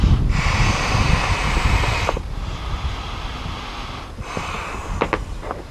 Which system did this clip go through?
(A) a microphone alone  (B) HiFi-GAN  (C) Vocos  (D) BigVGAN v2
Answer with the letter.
A